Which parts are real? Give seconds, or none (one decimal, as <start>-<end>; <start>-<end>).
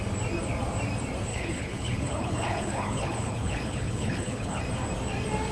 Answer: 0.0-1.3; 4.6-5.5